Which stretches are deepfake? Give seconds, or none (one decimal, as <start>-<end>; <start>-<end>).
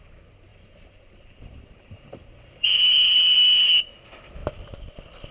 0.5-3.7